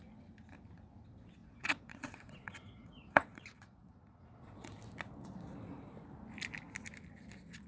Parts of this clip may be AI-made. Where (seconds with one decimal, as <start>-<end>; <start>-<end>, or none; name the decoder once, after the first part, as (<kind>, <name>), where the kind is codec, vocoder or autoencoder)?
1.4-4.8 (vocoder, Vocos)